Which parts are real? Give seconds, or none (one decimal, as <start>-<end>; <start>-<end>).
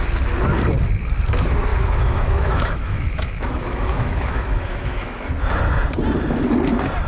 0.0-1.7; 5.3-7.1